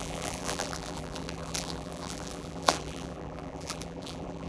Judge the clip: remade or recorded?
remade